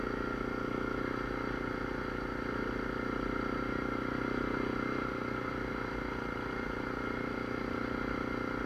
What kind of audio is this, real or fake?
real